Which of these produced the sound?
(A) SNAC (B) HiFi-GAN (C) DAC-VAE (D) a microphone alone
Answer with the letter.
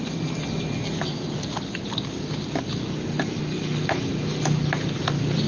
D